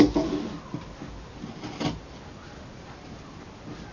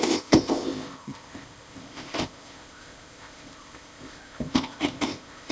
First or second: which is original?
first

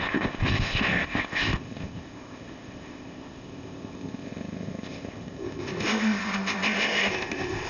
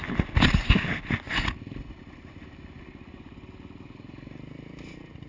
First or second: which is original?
second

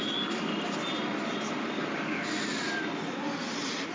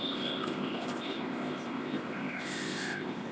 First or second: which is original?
first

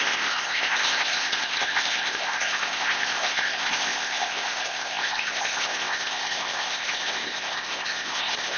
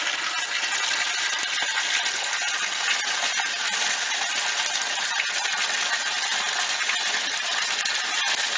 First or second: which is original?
second